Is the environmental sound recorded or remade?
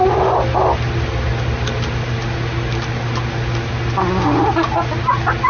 recorded